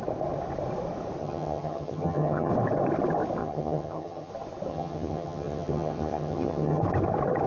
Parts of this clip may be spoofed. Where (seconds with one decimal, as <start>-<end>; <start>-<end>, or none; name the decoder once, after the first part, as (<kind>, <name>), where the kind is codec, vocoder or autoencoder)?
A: 1.2-2.5 (vocoder, HiFi-GAN); 3.4-4.3; 4.7-6.8